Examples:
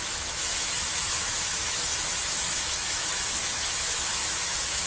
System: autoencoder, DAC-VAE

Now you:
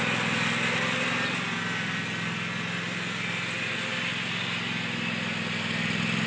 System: none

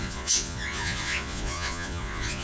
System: vocoder, Vocos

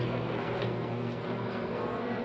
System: codec, SNAC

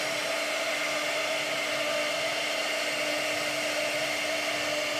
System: none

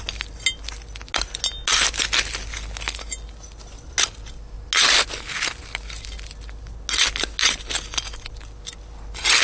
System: none